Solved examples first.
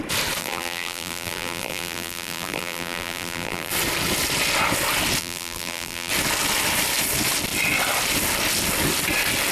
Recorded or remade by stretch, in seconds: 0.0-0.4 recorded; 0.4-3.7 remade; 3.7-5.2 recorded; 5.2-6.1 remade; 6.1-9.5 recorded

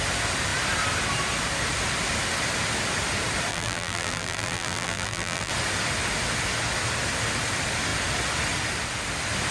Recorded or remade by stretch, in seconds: 0.0-3.5 recorded; 3.5-5.5 remade; 5.5-9.5 recorded

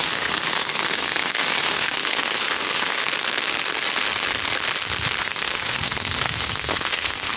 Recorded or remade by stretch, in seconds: 0.0-3.0 remade; 3.0-5.2 recorded; 5.2-7.4 remade

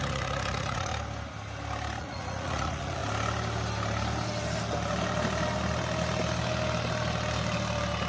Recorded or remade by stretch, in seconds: 0.0-0.9 remade; 0.9-2.0 recorded; 2.0-3.0 remade; 3.0-8.1 recorded

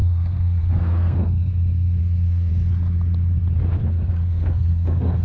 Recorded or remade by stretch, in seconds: 0.0-1.5 remade; 1.5-2.0 recorded; 2.0-2.5 remade; 2.5-4.1 recorded; 4.1-5.2 remade

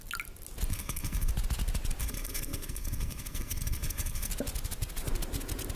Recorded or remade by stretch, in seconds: 0.0-0.7 recorded; 0.7-1.3 remade; 1.3-2.0 recorded; 2.0-4.3 remade; 4.3-5.8 recorded

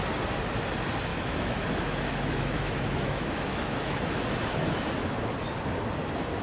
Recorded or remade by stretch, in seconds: 0.0-1.1 recorded; 1.1-4.2 remade; 4.2-6.4 recorded

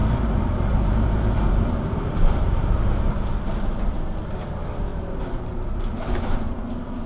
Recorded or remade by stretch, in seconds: 0.0-4.3 remade; 4.3-4.9 recorded; 4.9-7.1 remade